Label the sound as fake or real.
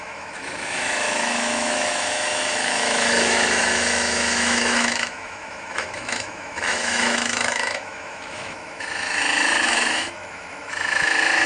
fake